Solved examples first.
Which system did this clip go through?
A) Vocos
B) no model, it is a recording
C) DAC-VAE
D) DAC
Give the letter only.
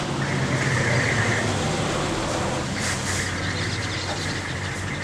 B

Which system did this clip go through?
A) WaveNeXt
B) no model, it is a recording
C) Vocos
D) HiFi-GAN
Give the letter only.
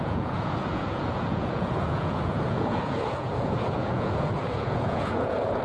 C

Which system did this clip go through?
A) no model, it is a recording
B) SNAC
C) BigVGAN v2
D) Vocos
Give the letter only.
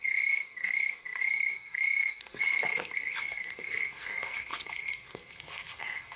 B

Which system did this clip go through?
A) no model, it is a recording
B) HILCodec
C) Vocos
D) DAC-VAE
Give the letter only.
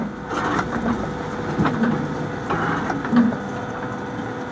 A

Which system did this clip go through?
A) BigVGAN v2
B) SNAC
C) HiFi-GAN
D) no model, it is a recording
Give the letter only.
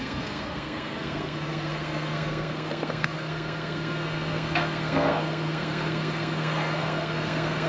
B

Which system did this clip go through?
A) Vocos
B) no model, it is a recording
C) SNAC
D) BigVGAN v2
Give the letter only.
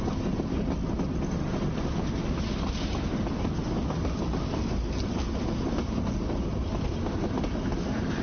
B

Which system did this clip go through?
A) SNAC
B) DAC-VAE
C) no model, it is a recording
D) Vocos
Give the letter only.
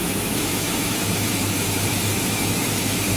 B